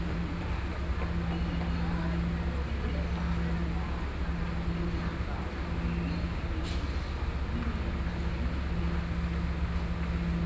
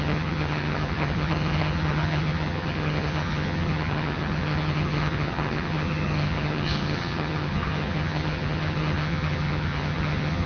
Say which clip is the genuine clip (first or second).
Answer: first